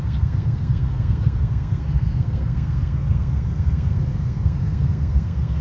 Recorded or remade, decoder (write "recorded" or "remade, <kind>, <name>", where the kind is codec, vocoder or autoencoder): remade, codec, SNAC